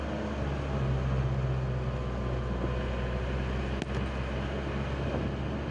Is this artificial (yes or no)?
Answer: no